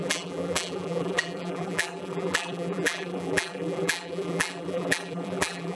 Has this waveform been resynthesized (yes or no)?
yes